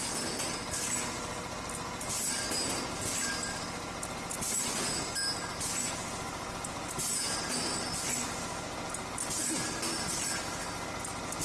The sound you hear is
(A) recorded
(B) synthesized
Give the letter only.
A